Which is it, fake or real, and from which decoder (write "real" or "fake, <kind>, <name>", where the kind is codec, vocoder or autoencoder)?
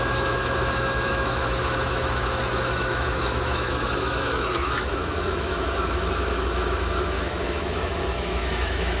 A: fake, autoencoder, DAC-VAE